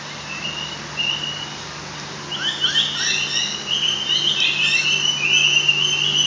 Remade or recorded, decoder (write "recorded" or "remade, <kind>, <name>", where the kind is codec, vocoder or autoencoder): recorded